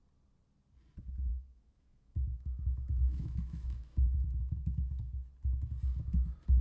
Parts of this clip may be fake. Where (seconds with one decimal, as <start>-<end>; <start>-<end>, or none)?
1.3-4.9